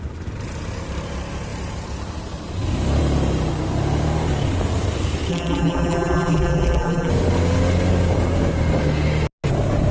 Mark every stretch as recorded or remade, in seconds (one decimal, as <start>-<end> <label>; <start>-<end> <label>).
0.0-5.3 recorded; 5.3-7.1 remade; 7.1-9.9 recorded